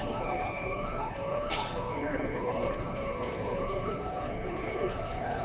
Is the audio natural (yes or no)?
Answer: no